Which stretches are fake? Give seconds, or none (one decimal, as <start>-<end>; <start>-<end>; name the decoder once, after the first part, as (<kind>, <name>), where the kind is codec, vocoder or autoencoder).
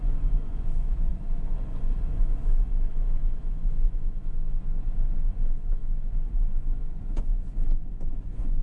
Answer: 0.0-8.6 (vocoder, Vocos)